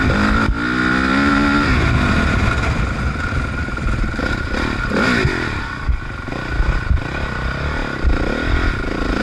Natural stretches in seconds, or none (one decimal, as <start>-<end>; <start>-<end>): 0.0-9.2